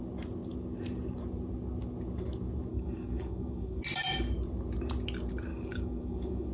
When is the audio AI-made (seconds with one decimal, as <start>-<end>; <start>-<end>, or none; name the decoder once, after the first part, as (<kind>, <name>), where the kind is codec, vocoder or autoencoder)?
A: 2.7-3.8 (codec, DAC); 5.5-6.5